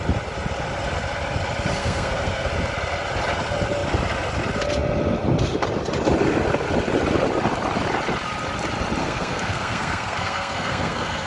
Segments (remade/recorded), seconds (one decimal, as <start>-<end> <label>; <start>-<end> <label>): 0.0-1.8 recorded; 1.8-2.5 remade; 2.5-9.0 recorded; 9.0-11.3 remade